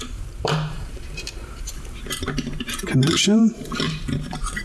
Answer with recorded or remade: remade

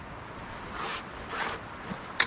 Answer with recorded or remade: recorded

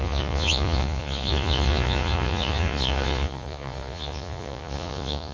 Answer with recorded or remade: remade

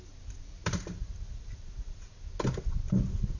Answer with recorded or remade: recorded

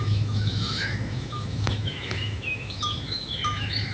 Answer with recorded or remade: remade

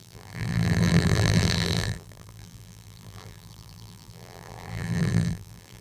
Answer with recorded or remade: remade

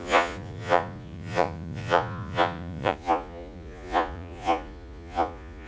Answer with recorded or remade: remade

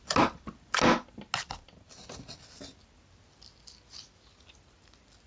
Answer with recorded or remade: recorded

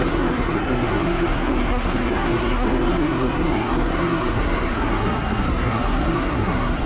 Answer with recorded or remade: remade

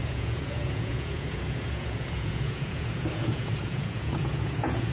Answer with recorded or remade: remade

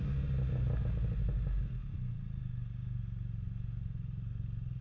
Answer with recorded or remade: recorded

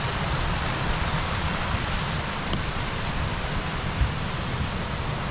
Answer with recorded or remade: recorded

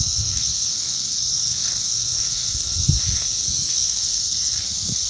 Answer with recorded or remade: remade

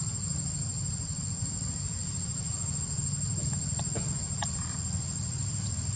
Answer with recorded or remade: recorded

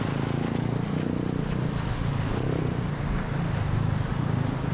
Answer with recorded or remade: recorded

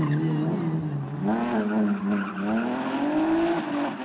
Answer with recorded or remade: recorded